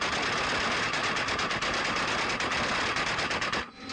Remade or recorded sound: recorded